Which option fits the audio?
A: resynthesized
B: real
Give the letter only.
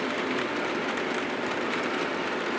B